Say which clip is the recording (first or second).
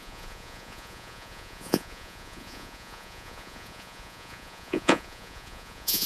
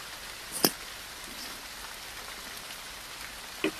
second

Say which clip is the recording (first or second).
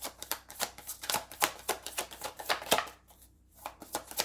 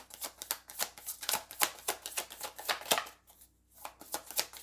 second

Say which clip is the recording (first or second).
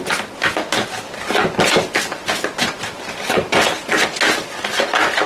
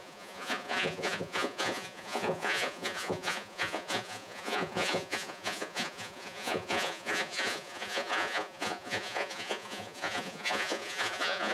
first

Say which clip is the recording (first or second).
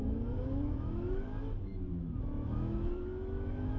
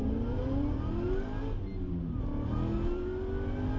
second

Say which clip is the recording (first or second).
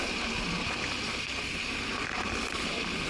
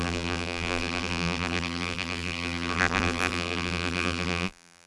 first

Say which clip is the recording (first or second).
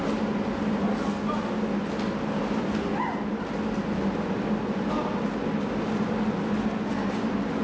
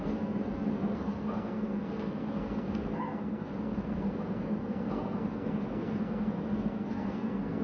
first